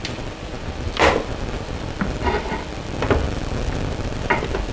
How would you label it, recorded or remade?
remade